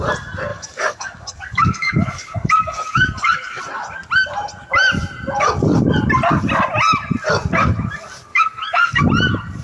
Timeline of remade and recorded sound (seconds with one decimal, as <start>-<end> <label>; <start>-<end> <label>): 0.0-0.5 recorded; 0.5-3.6 remade; 3.6-8.3 recorded; 8.3-9.0 remade; 9.0-9.6 recorded